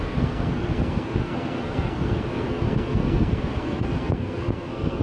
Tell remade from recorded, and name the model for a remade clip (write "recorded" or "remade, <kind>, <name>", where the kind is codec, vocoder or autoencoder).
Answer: remade, codec, SNAC